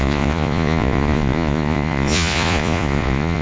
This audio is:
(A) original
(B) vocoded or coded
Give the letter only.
B